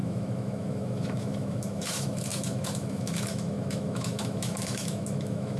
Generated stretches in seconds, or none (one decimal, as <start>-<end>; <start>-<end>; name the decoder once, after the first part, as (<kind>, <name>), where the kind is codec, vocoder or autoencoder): 0.0-5.6 (autoencoder, DAC-VAE)